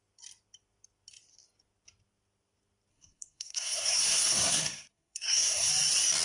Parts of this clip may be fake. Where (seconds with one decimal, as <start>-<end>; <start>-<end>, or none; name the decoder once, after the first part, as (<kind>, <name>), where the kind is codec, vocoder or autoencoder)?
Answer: 2.9-5.7 (codec, SNAC)